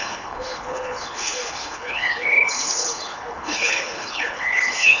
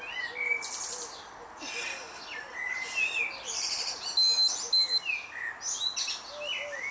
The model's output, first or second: first